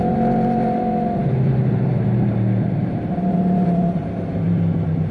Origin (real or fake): fake